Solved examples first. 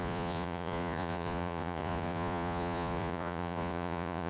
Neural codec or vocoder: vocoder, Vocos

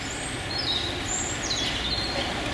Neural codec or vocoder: none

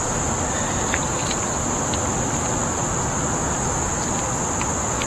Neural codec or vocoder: none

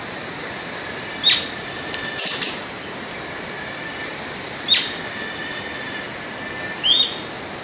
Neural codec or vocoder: none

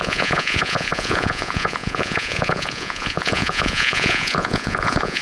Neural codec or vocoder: vocoder, Vocos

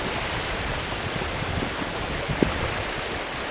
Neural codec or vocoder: none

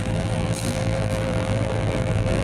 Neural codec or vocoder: vocoder, BigVGAN v2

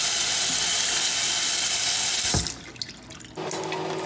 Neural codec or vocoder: none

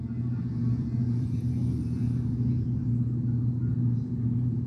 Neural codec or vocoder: vocoder, Vocos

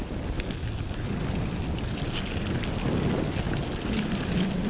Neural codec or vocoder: none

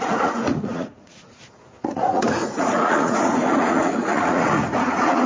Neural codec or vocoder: vocoder, Vocos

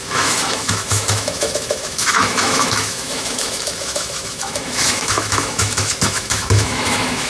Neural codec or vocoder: autoencoder, DAC-VAE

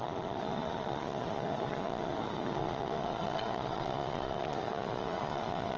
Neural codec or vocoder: vocoder, Vocos